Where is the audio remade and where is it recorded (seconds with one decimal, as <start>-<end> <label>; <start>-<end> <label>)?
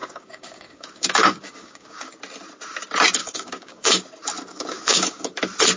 0.0-2.2 remade; 2.2-3.2 recorded; 3.2-4.0 remade; 4.0-4.5 recorded; 4.5-5.3 remade; 5.3-5.8 recorded